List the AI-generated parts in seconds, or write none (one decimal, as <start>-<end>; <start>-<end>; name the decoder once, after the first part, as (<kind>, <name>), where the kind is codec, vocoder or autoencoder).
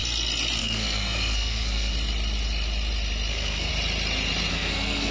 0.6-1.9 (codec, SNAC); 3.3-3.7; 4.5-5.1